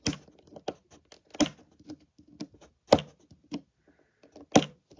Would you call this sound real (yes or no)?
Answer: yes